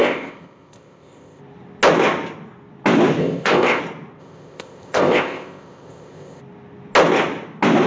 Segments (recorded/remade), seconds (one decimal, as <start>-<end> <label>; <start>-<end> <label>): 0.0-1.4 remade; 1.4-3.2 recorded; 3.2-3.8 remade; 3.8-4.2 recorded; 4.2-6.4 remade; 6.4-7.9 recorded